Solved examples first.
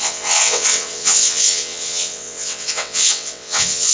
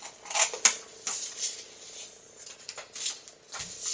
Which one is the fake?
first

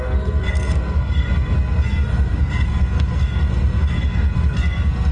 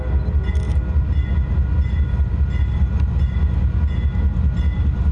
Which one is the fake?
first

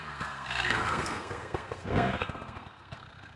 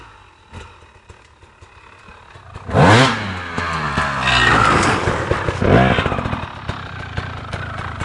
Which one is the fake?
first